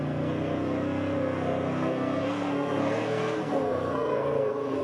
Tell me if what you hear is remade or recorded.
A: remade